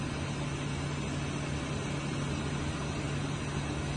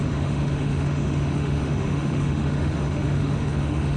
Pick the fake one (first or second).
second